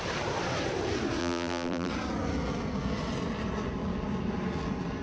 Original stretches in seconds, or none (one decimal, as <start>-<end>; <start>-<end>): 0.0-1.2; 1.9-5.0

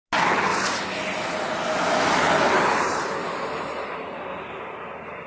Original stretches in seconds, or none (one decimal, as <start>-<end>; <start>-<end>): 0.0-5.3